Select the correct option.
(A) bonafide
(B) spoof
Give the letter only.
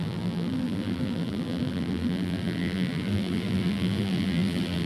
B